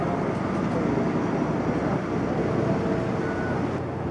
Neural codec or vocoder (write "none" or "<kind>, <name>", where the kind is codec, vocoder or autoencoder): none